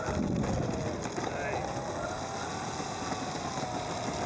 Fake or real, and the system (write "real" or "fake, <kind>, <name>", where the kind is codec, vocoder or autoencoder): real